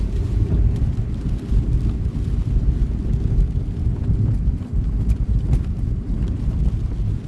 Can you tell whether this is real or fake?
real